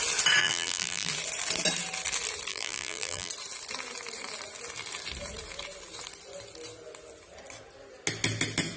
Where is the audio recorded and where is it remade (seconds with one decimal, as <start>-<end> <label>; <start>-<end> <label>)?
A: 0.0-0.4 recorded; 0.4-1.1 remade; 1.1-2.5 recorded; 2.5-3.3 remade; 3.3-8.8 recorded